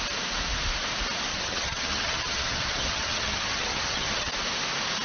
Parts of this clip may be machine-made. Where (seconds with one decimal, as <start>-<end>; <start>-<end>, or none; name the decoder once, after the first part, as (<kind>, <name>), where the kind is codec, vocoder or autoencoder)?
1.3-4.3 (vocoder, HiFi-GAN)